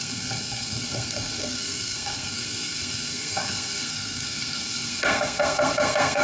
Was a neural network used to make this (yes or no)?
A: yes